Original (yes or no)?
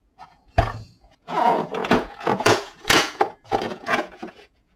no